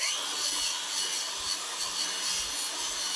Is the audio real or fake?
real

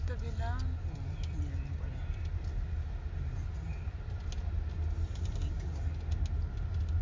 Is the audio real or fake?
real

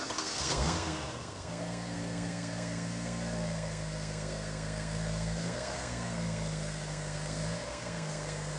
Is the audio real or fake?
fake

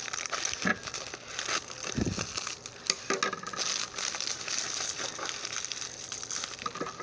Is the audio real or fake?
real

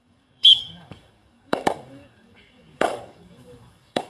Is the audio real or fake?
fake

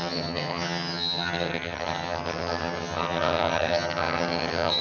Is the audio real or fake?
fake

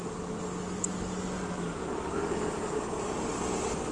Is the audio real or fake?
real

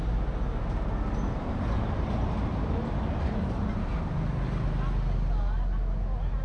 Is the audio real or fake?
real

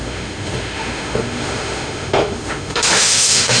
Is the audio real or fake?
fake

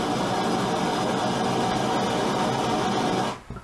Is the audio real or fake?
real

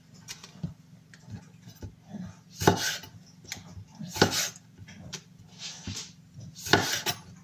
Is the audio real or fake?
real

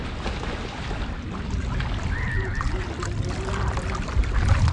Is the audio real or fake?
real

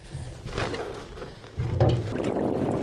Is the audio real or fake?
real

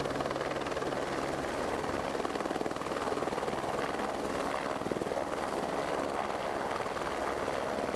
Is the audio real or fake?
real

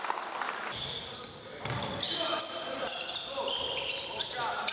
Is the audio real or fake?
fake